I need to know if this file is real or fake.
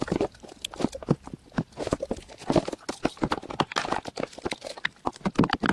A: real